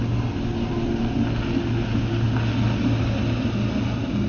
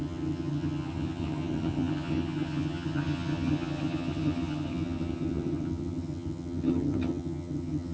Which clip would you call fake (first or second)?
second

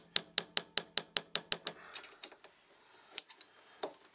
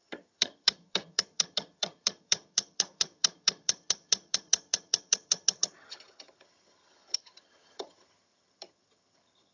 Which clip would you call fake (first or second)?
second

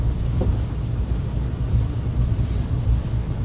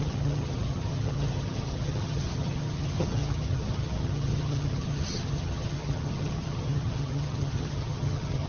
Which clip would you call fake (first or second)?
second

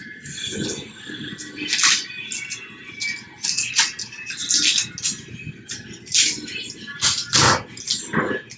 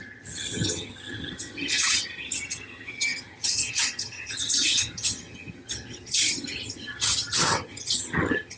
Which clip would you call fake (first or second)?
second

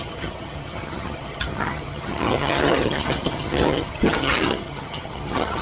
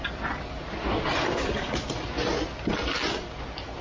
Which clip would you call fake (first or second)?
first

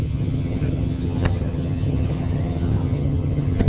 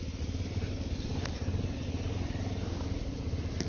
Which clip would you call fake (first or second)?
first